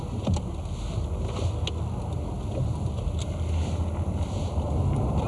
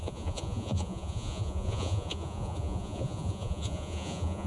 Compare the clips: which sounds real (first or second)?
first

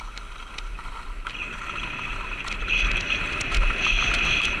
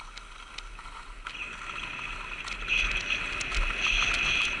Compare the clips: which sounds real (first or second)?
second